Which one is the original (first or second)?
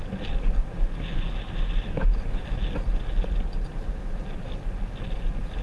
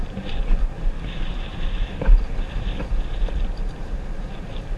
first